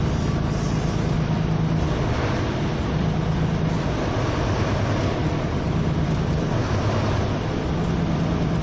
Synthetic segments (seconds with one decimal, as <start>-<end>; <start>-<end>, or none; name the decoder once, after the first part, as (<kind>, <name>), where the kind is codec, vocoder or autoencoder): 5.2-5.7 (vocoder, BigVGAN v2)